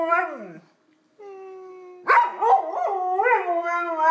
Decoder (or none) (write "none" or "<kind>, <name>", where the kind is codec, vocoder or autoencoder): none